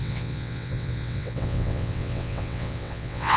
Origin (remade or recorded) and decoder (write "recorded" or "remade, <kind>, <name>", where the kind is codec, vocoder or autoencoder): remade, vocoder, WaveNeXt